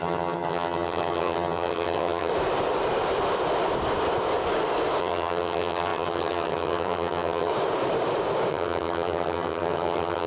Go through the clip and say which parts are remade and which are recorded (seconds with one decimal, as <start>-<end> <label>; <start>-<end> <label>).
0.0-2.3 remade; 2.3-5.0 recorded; 5.0-7.5 remade; 7.5-8.5 recorded; 8.5-10.3 remade